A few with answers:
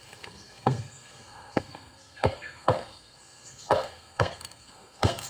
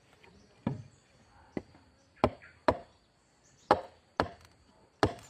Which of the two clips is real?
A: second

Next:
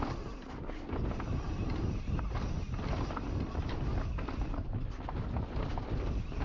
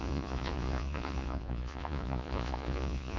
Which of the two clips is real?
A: first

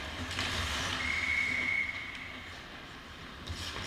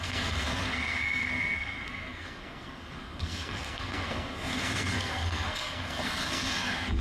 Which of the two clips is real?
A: first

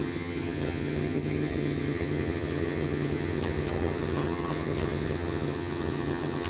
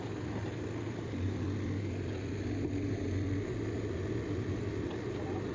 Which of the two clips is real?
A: second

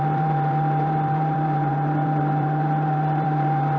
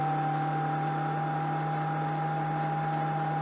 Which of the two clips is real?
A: second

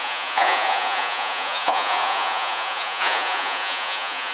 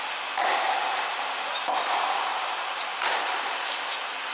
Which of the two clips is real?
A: second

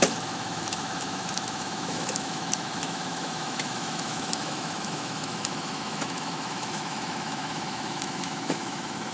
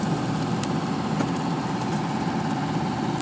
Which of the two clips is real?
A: second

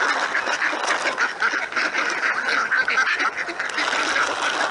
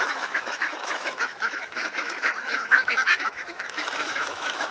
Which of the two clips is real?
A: first